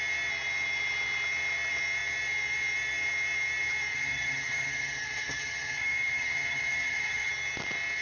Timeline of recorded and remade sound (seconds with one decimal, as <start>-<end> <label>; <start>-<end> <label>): 0.0-3.9 recorded; 3.9-7.3 remade; 7.3-8.0 recorded